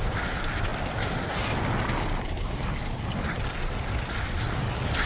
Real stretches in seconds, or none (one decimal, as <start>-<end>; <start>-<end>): 0.0-5.1